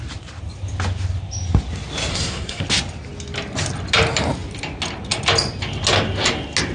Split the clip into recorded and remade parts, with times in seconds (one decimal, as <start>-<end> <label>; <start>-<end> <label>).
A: 0.0-2.1 recorded; 2.1-2.6 remade; 2.6-6.7 recorded